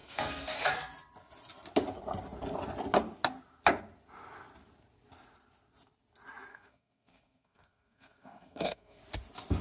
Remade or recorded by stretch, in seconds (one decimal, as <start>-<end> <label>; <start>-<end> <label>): 0.0-0.7 remade; 0.7-6.5 recorded; 6.5-9.0 remade; 9.0-9.6 recorded